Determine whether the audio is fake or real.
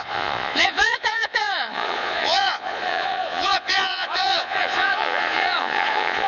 fake